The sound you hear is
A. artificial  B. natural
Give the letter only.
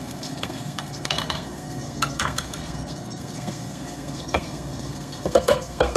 A